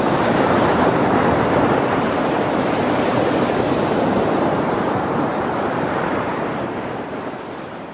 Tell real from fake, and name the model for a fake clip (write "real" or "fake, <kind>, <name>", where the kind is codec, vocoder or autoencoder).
fake, vocoder, BigVGAN v2